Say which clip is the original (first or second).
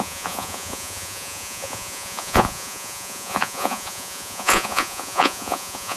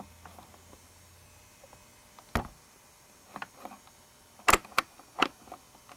second